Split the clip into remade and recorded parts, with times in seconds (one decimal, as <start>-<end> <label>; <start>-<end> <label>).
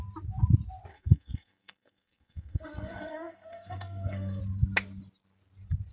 0.0-0.9 recorded; 0.9-4.4 remade; 4.4-5.9 recorded